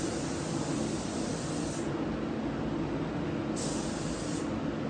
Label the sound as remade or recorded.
recorded